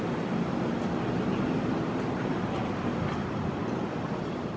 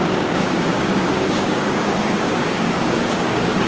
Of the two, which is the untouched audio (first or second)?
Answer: first